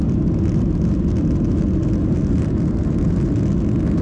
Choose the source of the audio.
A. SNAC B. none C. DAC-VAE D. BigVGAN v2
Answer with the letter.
B